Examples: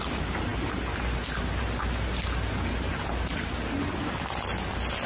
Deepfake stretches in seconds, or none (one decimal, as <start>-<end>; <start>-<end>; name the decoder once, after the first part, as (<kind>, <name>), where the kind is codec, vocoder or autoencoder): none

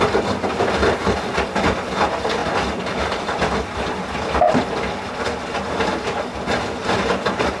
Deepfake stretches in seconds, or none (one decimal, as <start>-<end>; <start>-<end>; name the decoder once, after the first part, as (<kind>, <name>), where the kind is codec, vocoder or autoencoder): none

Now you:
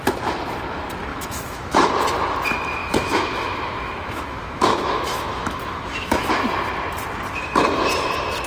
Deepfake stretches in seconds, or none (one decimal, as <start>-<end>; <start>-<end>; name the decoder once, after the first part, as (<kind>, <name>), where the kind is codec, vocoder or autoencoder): 1.1-1.9 (autoencoder, DAC-VAE); 2.8-6.3